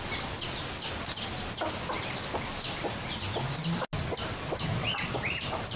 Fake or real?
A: real